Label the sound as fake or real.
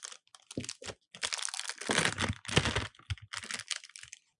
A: real